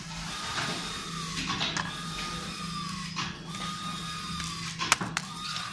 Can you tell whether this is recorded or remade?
recorded